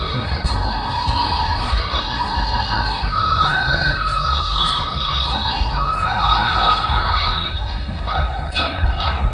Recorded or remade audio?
remade